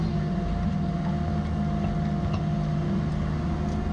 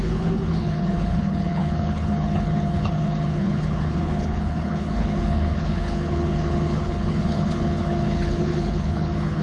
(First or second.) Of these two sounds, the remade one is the second